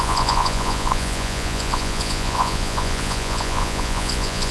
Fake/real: fake